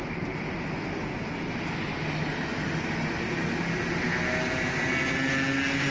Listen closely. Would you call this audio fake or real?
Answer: real